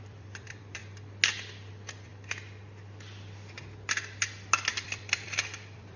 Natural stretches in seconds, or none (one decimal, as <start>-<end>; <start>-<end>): 0.8-1.7; 2.1-4.7